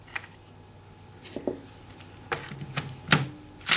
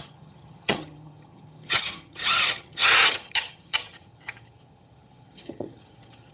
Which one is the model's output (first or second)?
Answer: second